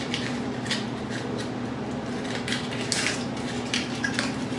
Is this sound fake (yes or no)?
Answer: no